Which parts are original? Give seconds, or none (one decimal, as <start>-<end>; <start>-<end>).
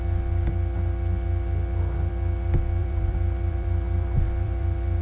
0.0-2.8